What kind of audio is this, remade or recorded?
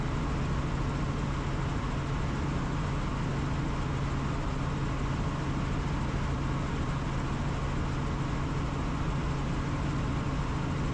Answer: recorded